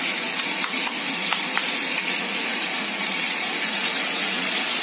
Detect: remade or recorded remade